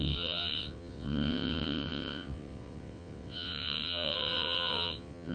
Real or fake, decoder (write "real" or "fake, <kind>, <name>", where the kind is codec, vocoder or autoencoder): fake, vocoder, WaveNeXt